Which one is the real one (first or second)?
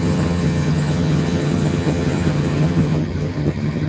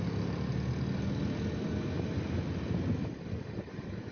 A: second